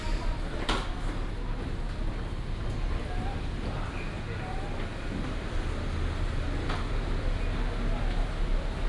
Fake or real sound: real